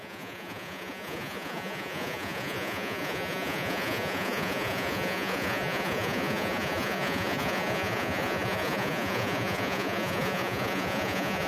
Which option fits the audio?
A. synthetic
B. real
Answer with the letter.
A